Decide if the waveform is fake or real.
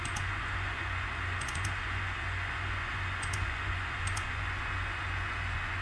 fake